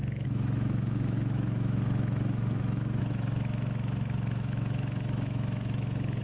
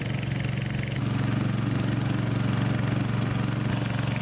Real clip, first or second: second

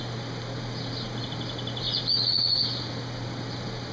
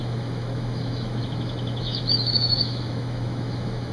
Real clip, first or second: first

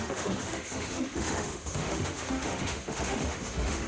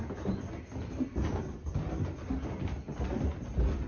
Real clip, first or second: second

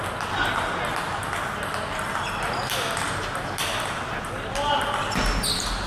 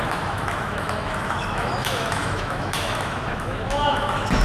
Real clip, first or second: first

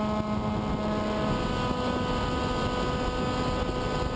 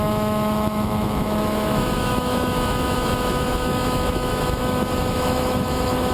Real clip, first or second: first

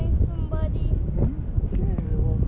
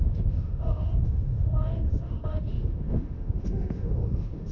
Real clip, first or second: first